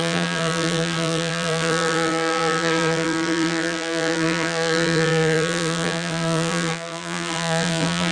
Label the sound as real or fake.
fake